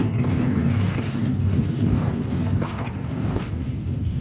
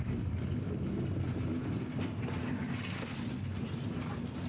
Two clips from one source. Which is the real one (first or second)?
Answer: second